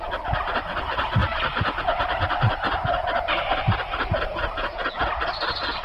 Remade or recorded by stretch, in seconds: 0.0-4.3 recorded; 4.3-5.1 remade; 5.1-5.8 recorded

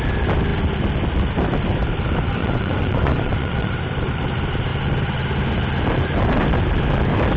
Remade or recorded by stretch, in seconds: 0.0-2.4 recorded; 2.4-3.7 remade; 3.7-7.4 recorded